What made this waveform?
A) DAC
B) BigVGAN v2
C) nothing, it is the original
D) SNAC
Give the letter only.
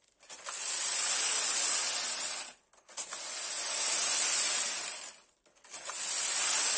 C